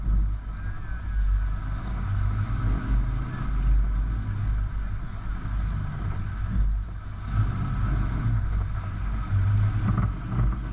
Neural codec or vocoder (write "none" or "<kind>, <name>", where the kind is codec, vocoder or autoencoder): none